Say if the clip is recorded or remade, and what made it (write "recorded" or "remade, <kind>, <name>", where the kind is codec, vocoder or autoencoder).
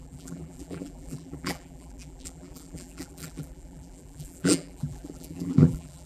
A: remade, vocoder, BigVGAN v2